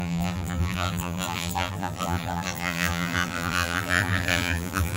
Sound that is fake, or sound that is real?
fake